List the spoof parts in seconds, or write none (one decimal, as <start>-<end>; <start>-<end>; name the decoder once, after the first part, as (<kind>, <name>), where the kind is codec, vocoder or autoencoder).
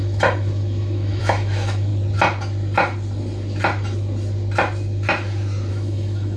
0.0-1.9 (autoencoder, DAC-VAE); 5.7-6.4